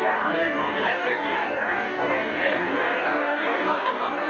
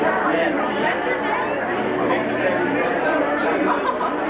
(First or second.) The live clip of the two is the second